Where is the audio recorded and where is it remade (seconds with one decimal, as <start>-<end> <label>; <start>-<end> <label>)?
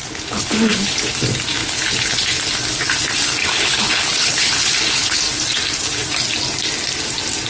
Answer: 0.0-1.1 remade; 1.1-1.6 recorded; 1.6-2.4 remade; 2.4-3.4 recorded; 3.4-5.2 remade; 5.2-7.5 recorded